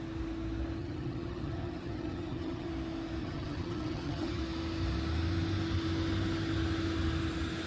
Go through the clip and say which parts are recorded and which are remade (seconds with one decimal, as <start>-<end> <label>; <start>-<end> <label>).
0.0-0.8 recorded; 0.8-2.7 remade; 2.7-3.2 recorded; 3.2-4.4 remade; 4.4-7.7 recorded